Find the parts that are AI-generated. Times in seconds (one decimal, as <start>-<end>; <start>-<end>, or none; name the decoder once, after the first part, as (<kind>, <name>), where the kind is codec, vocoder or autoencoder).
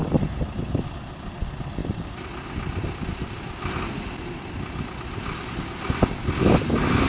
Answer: none